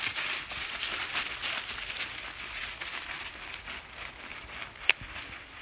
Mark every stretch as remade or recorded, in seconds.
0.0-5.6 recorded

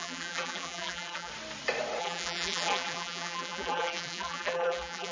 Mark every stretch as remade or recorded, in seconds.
0.0-1.3 remade; 1.3-2.0 recorded; 2.0-5.1 remade

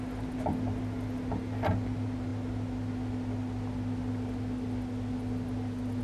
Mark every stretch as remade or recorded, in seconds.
0.0-6.0 recorded